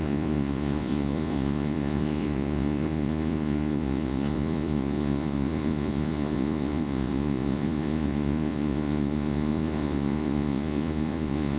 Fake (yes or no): yes